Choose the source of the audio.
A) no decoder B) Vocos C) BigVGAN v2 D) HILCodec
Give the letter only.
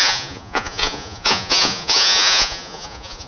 B